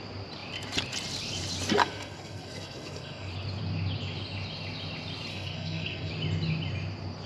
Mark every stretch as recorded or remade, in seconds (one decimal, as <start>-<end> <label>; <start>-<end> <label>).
0.0-1.8 recorded; 1.8-3.3 remade; 3.3-5.3 recorded; 5.3-6.1 remade; 6.1-7.3 recorded